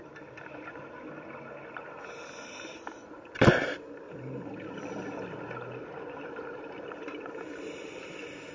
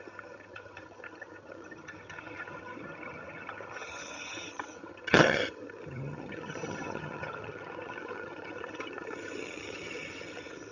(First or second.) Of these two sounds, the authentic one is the first